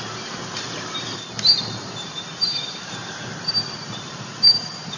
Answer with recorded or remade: remade